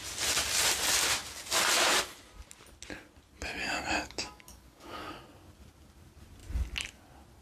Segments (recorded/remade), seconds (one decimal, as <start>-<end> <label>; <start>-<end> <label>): 0.0-3.6 recorded; 3.6-5.2 remade; 5.2-7.4 recorded